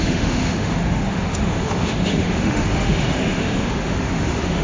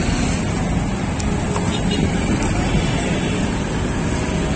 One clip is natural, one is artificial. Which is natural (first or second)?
second